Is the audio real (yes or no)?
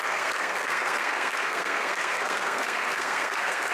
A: no